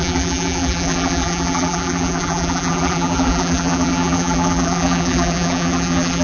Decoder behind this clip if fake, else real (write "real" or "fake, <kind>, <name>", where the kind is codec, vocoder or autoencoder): fake, vocoder, BigVGAN v2